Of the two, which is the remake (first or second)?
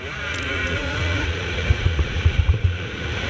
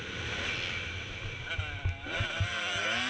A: first